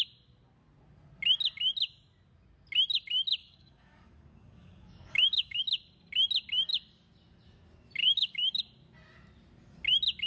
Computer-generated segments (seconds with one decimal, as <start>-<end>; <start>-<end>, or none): 3.4-5.6; 8.0-8.6